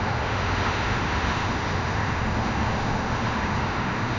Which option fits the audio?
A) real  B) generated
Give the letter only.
B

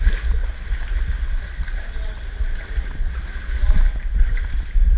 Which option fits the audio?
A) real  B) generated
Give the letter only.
A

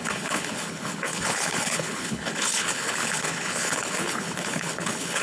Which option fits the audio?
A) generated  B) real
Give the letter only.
A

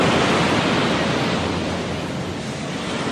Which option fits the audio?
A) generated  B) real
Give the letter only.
B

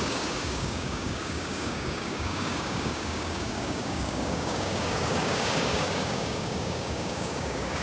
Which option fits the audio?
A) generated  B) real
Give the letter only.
A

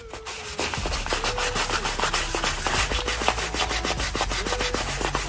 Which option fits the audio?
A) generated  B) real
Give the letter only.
B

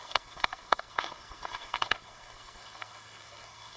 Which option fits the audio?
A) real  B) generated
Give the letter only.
B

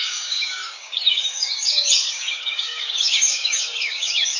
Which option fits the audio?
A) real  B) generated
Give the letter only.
B